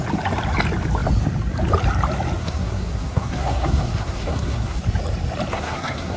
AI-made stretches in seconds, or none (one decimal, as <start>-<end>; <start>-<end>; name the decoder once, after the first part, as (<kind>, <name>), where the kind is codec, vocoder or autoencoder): 2.4-4.8 (codec, SNAC); 5.5-6.2